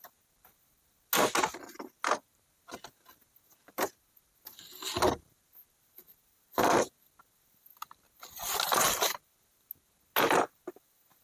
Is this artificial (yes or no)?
no